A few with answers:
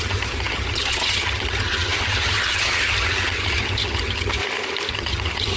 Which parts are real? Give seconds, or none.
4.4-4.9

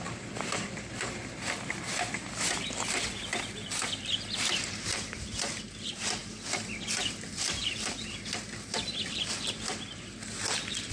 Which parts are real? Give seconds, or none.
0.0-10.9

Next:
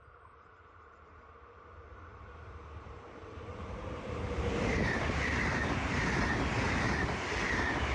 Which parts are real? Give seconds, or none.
5.8-6.5